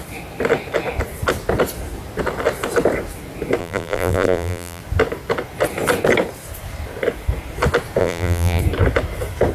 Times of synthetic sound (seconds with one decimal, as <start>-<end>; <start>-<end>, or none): 3.6-4.8; 8.0-8.6